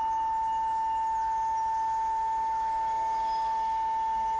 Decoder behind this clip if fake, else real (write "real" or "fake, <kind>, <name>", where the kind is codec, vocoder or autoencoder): real